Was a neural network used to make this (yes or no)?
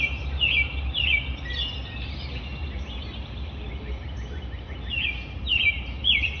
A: no